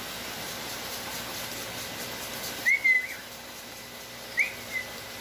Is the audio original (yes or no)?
yes